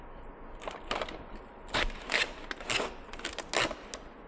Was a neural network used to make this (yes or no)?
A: no